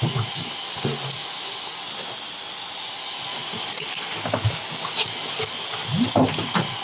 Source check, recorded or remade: recorded